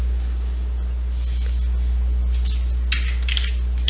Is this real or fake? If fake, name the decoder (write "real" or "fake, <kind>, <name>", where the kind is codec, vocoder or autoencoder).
real